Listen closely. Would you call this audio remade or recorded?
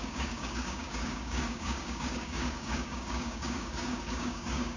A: remade